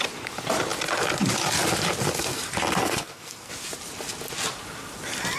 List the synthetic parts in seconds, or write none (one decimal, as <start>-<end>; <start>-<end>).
2.8-3.5